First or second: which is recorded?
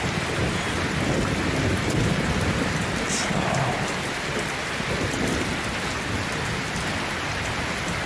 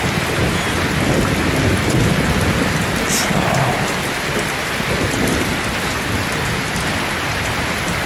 second